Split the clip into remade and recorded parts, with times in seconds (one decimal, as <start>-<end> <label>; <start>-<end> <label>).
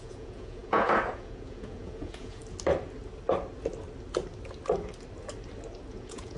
0.0-2.4 remade; 2.4-5.9 recorded; 5.9-6.4 remade